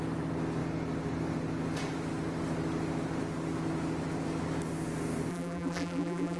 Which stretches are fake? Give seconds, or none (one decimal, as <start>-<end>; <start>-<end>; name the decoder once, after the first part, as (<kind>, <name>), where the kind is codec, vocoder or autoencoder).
5.3-6.4 (vocoder, BigVGAN v2)